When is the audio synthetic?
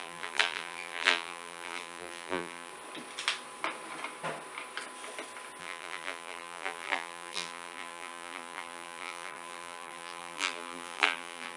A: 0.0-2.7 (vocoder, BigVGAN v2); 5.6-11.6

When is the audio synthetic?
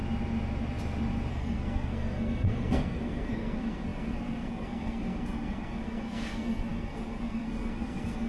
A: 1.3-8.3 (codec, SNAC)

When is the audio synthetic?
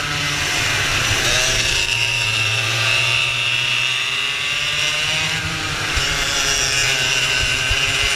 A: 0.0-8.2 (vocoder, BigVGAN v2)